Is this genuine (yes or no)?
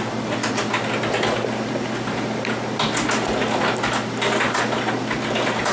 yes